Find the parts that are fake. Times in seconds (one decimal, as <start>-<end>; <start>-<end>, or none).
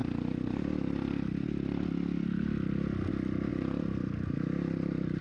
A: 3.5-5.2